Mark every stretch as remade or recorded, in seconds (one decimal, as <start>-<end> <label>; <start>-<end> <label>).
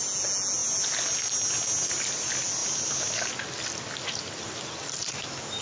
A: 0.0-5.6 recorded